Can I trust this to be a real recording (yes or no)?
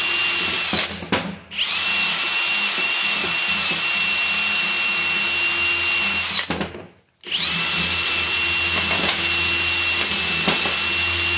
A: yes